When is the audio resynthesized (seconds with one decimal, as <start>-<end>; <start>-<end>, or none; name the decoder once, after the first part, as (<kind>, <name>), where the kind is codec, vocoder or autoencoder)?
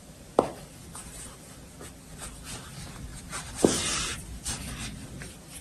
none